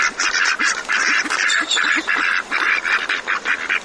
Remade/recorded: recorded